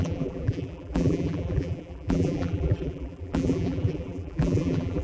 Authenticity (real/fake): fake